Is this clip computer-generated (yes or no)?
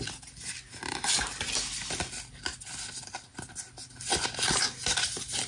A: no